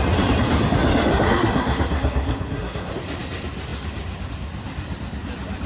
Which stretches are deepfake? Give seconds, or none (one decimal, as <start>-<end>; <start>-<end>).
1.1-2.9